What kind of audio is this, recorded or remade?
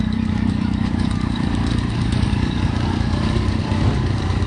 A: remade